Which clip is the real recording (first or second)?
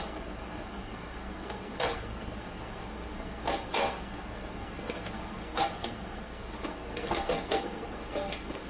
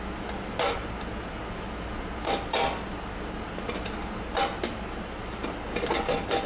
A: second